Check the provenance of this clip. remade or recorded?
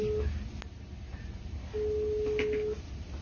recorded